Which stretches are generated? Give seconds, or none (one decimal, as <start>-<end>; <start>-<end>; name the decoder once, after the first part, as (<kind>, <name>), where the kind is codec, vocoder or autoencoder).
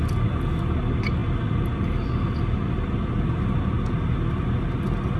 none